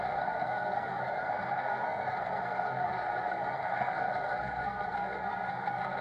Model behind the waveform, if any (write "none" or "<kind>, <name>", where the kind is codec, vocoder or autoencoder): codec, SNAC